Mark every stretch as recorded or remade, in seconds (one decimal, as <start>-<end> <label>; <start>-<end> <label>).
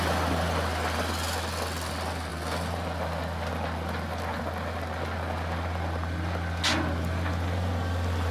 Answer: 0.0-8.3 recorded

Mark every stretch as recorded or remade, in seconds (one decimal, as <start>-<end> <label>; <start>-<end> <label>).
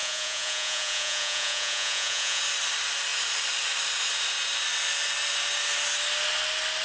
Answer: 0.0-2.4 remade; 2.4-6.8 recorded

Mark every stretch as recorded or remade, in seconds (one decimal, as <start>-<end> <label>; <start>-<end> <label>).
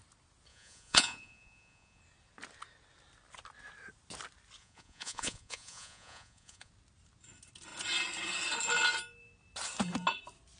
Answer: 0.0-0.5 recorded; 0.5-2.0 remade; 2.0-4.6 recorded; 4.6-6.7 remade; 6.7-10.6 recorded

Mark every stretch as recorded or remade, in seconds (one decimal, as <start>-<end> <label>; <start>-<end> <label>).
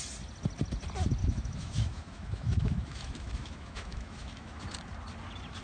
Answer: 0.0-1.2 recorded; 1.2-4.6 remade; 4.6-5.6 recorded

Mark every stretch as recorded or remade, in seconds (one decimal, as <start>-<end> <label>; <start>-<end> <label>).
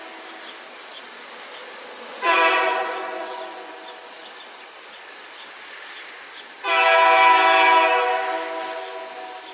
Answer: 0.0-2.1 recorded; 2.1-3.7 remade; 3.7-9.5 recorded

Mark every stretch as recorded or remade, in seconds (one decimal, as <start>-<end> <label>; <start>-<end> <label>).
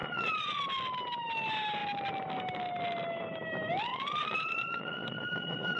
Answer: 0.0-0.6 remade; 0.6-3.9 recorded; 3.9-5.8 remade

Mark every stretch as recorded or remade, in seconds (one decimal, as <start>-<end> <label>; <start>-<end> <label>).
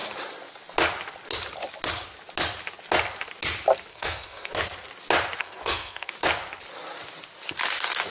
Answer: 0.0-3.9 recorded; 3.9-4.5 remade; 4.5-5.4 recorded; 5.4-6.1 remade; 6.1-8.1 recorded